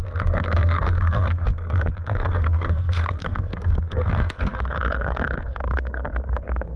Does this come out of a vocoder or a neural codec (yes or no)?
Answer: yes